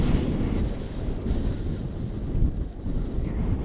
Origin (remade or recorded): recorded